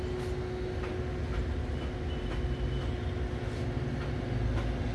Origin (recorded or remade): recorded